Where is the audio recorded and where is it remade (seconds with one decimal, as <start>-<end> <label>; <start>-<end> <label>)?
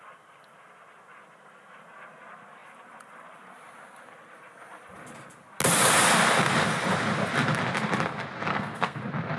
0.0-8.5 recorded; 8.5-9.0 remade; 9.0-9.4 recorded